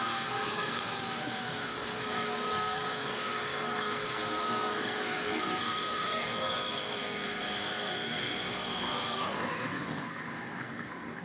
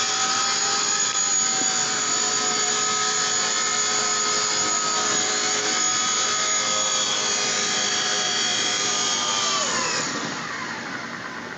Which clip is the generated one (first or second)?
first